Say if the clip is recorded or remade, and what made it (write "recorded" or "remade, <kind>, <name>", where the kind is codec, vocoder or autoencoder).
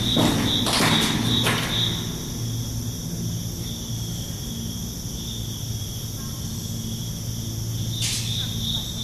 recorded